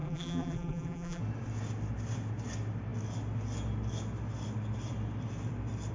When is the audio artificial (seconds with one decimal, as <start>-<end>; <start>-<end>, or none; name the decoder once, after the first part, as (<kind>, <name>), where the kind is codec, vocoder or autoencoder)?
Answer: 0.0-1.2 (vocoder, BigVGAN v2)